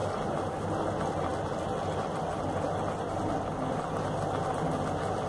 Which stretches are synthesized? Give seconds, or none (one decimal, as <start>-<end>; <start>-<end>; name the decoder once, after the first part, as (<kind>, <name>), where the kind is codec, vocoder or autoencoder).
0.0-0.6 (vocoder, BigVGAN v2)